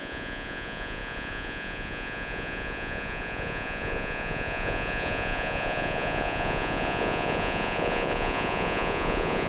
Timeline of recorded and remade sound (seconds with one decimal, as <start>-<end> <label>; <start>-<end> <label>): 0.0-9.5 remade